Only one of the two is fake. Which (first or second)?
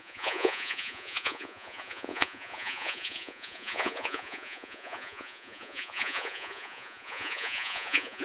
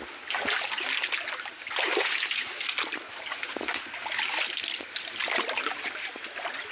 first